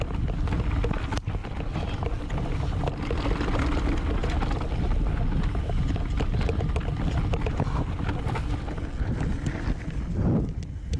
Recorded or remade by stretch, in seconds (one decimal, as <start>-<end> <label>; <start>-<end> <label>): 0.0-11.0 recorded